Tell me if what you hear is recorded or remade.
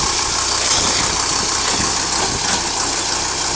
recorded